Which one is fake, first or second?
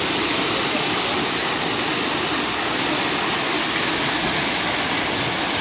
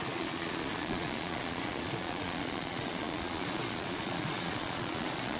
second